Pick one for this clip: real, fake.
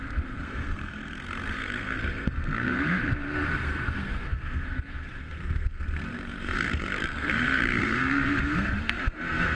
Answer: fake